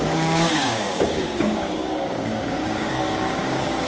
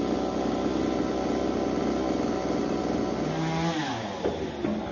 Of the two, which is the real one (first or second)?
second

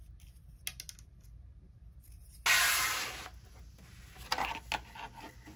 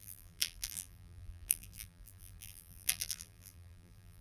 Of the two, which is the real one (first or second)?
first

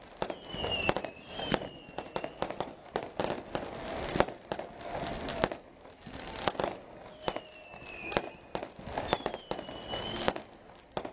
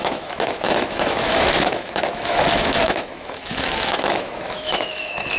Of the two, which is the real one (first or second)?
first